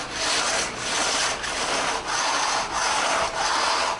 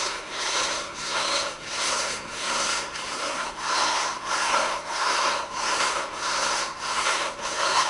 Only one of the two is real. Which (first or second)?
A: first